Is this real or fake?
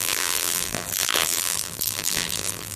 fake